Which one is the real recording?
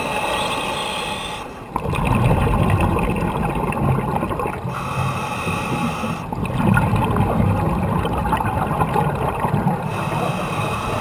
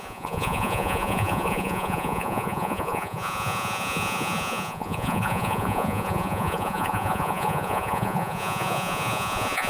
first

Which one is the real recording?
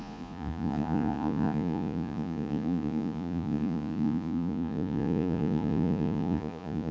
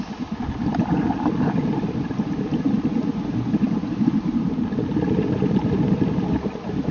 second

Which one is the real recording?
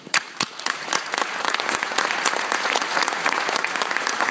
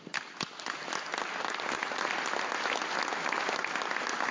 second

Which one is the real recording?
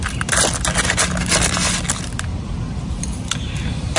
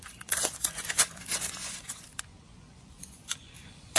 first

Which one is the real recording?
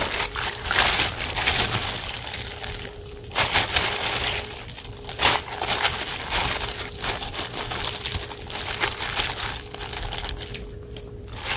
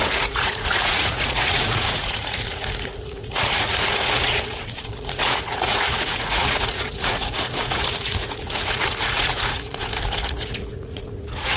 first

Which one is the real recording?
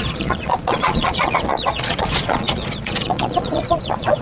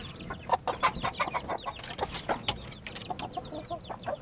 second